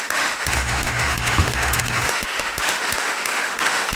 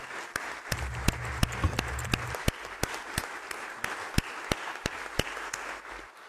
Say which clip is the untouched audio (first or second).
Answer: second